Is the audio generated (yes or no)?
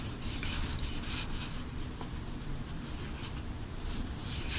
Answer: no